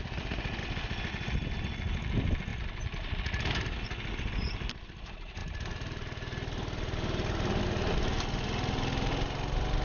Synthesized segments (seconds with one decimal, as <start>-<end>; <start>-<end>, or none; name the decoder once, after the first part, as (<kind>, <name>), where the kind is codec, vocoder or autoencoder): 0.6-1.1 (vocoder, BigVGAN v2); 2.5-3.1

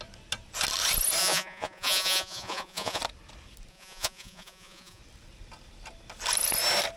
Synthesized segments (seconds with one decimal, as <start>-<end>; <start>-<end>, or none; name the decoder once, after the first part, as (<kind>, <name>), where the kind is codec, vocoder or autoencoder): 1.2-3.0 (vocoder, Vocos); 3.7-5.0

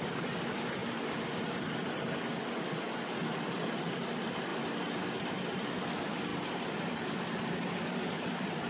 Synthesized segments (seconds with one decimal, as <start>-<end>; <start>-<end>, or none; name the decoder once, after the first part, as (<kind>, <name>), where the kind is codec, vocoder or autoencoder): 0.0-0.8 (vocoder, BigVGAN v2); 3.9-4.5; 5.3-6.3; 6.9-8.7

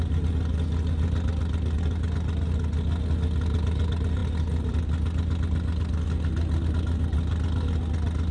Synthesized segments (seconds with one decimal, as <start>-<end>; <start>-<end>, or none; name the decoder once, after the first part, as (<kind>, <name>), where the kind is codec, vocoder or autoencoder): none

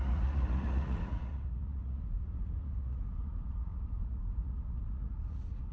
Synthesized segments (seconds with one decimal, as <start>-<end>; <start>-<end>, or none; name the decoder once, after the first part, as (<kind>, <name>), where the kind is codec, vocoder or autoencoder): 0.0-5.7 (vocoder, Vocos)